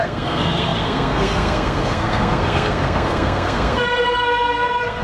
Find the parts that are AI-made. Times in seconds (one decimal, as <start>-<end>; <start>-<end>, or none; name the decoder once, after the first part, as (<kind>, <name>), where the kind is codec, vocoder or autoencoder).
0.0-5.0 (codec, SNAC)